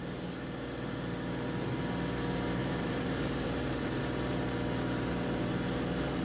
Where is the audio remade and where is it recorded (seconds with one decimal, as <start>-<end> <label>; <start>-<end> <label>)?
0.0-2.6 recorded; 2.6-4.0 remade; 4.0-6.2 recorded

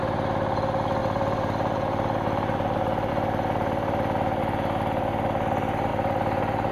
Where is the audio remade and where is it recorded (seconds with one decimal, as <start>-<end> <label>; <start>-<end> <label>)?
0.0-1.0 recorded; 1.0-3.1 remade; 3.1-5.9 recorded; 5.9-6.7 remade

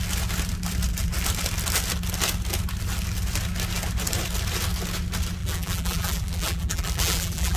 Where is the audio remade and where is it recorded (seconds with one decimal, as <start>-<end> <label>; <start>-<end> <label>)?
0.0-5.4 recorded; 5.4-7.6 remade

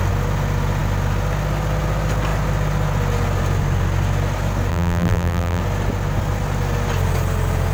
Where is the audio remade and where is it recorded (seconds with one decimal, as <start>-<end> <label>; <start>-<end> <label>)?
0.0-4.7 recorded; 4.7-5.6 remade; 5.6-7.7 recorded

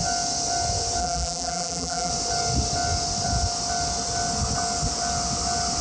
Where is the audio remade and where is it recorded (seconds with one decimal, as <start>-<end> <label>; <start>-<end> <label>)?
0.0-1.0 recorded; 1.0-2.1 remade; 2.1-5.8 recorded

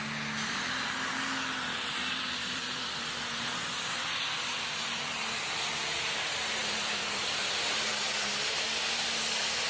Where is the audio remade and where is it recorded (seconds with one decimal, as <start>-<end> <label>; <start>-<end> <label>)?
0.0-2.4 recorded; 2.4-3.1 remade; 3.1-6.6 recorded; 6.6-7.2 remade; 7.2-7.9 recorded; 7.9-9.2 remade; 9.2-9.7 recorded